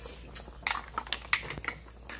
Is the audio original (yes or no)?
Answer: yes